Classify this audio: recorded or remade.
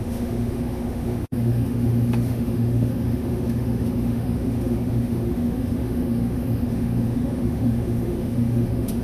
remade